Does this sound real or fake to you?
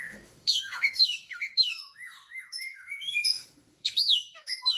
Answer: fake